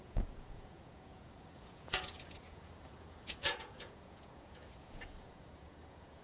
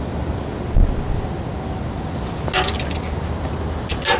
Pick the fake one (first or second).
first